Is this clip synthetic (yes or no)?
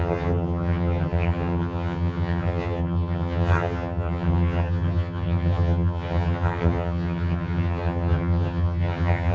yes